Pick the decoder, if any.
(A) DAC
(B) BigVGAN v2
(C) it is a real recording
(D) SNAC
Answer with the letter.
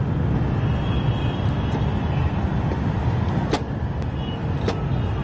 C